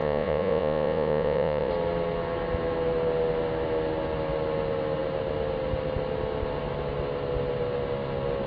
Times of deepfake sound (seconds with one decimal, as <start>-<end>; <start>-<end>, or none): 0.0-1.7